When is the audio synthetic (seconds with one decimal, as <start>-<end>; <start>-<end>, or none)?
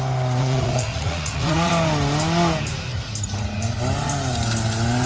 0.4-1.7